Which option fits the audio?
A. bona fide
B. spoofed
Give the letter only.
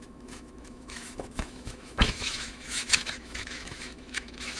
B